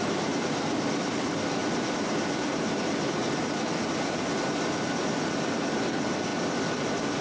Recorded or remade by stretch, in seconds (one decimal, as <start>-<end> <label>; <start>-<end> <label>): 0.0-7.2 recorded